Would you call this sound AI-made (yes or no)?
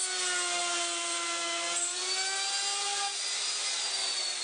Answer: no